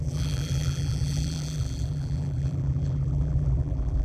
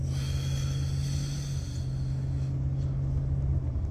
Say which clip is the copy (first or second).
first